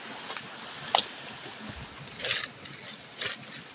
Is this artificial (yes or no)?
no